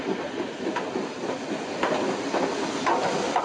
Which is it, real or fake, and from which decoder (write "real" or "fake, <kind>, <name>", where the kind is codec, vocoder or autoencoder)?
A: fake, vocoder, BigVGAN v2